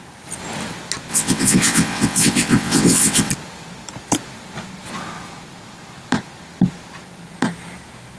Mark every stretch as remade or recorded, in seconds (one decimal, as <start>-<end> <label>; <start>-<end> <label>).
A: 0.0-1.1 recorded; 1.1-3.3 remade; 3.3-8.2 recorded